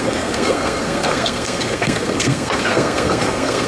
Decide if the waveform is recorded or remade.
remade